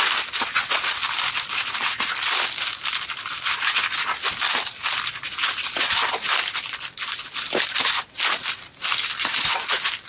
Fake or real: real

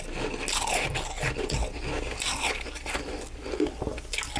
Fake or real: real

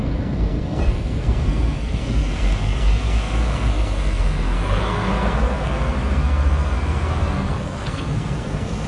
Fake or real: fake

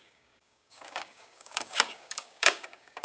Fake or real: fake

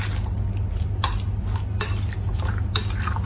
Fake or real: real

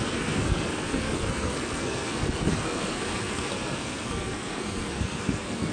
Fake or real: fake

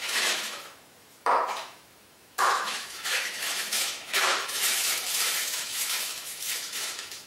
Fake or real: fake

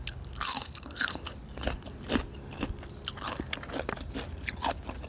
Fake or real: real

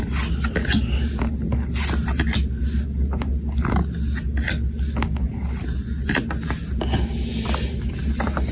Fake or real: real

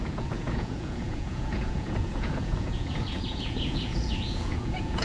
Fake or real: fake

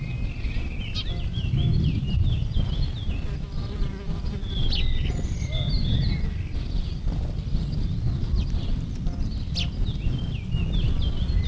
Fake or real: real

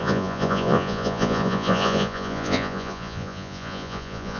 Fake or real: fake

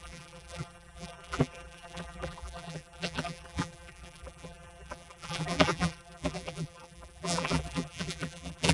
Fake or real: fake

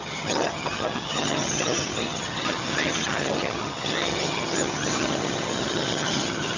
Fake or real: fake